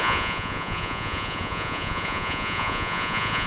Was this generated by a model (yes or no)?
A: yes